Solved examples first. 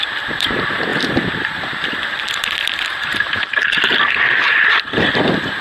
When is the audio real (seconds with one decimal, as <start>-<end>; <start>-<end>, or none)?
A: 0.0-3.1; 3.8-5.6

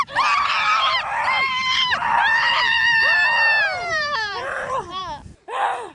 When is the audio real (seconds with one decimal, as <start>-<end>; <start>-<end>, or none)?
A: 3.3-3.8; 5.0-5.9

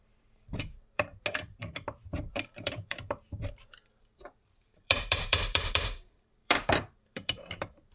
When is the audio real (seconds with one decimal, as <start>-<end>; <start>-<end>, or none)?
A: 1.1-2.3